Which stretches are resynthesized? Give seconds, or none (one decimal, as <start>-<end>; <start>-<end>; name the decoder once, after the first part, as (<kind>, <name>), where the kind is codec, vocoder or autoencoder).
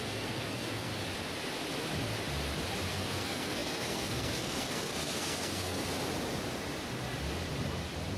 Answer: 0.0-0.9 (codec, SNAC); 2.9-5.8